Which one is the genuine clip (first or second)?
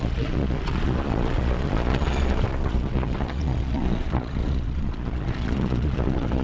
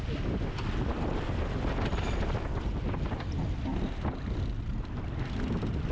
second